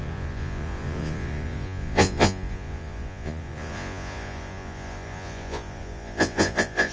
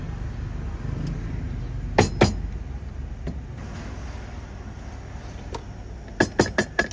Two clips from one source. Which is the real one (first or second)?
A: second